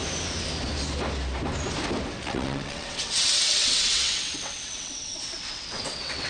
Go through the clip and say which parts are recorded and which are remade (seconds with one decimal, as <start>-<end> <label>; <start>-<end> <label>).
0.0-2.2 recorded; 2.2-6.3 remade